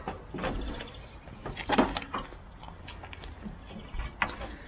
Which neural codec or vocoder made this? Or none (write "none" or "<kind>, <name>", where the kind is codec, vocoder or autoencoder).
none